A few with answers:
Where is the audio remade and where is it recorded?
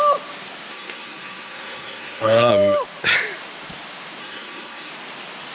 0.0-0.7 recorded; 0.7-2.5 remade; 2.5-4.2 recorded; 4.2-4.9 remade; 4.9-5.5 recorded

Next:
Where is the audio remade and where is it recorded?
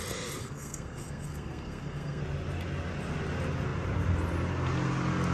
0.0-0.4 recorded; 0.4-2.2 remade; 2.2-5.3 recorded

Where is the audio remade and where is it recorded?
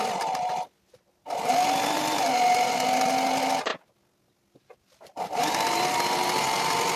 0.0-7.0 recorded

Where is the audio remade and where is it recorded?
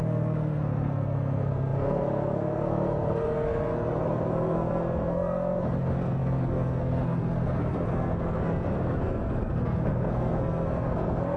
0.0-11.4 remade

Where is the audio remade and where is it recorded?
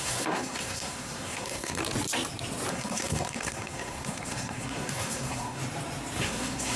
0.0-1.8 remade; 1.8-2.7 recorded; 2.7-5.6 remade; 5.6-6.2 recorded; 6.2-6.8 remade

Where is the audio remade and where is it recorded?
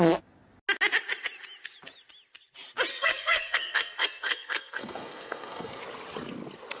0.0-2.9 recorded; 2.9-5.8 remade; 5.8-6.8 recorded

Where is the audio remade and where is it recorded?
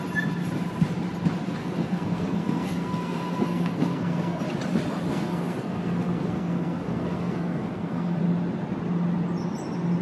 0.0-1.6 recorded; 1.6-4.4 remade; 4.4-5.1 recorded; 5.1-8.2 remade; 8.2-10.0 recorded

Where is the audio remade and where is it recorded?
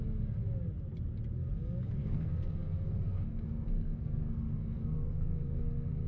0.0-2.0 recorded; 2.0-6.1 remade